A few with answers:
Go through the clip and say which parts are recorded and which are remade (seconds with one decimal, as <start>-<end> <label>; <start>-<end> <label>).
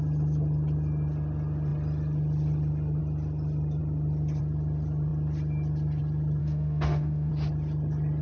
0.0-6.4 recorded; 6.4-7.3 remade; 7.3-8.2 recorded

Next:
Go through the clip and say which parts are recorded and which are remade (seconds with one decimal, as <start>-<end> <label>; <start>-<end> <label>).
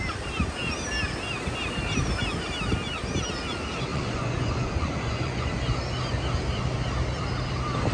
0.0-3.9 recorded; 3.9-5.5 remade; 5.5-7.9 recorded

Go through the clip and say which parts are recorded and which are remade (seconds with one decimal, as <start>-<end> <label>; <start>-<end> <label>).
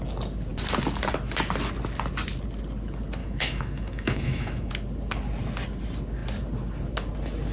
0.0-3.2 recorded; 3.2-4.7 remade; 4.7-7.5 recorded